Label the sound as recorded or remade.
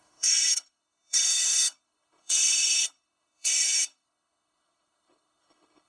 remade